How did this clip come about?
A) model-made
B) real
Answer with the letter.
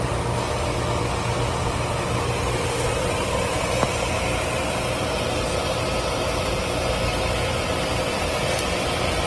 B